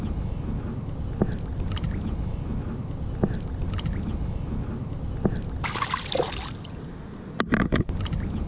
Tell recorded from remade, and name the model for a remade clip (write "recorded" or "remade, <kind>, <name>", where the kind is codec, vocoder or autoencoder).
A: recorded